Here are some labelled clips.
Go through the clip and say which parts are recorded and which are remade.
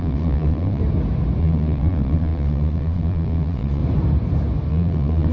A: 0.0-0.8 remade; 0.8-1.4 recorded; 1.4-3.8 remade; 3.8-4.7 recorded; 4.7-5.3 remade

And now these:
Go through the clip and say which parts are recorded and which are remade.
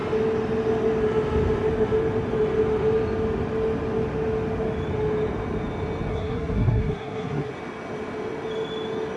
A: 0.0-6.1 recorded; 6.1-7.5 remade; 7.5-9.2 recorded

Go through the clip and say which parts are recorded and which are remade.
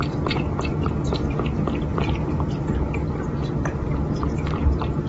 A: 0.0-1.9 recorded; 1.9-2.4 remade; 2.4-5.1 recorded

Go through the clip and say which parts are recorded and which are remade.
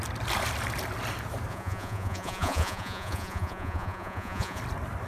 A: 0.0-1.5 recorded; 1.5-4.6 remade; 4.6-5.1 recorded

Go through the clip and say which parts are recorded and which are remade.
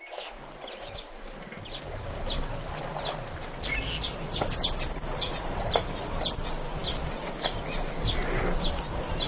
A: 0.0-9.3 recorded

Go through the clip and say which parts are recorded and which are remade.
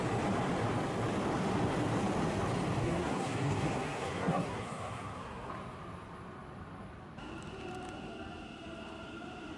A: 0.0-2.8 recorded; 2.8-5.5 remade; 5.5-9.6 recorded